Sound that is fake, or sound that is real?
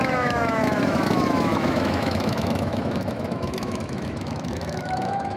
fake